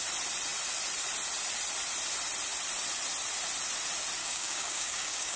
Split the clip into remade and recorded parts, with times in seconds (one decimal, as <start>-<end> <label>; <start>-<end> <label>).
0.0-4.2 recorded; 4.2-5.4 remade